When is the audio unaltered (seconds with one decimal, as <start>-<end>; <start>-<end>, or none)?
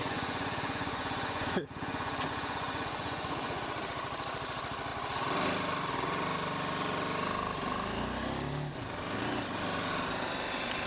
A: 3.6-10.9